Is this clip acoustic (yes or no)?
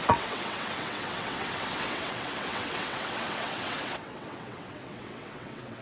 no